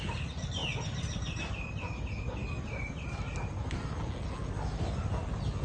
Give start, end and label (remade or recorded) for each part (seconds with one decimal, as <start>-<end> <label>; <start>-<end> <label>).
0.0-5.6 recorded